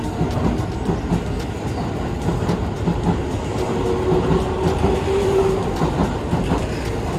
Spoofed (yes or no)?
no